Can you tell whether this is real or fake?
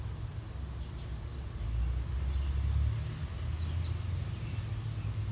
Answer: real